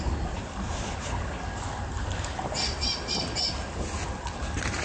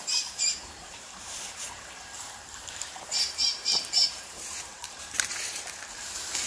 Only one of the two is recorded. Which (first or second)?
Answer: first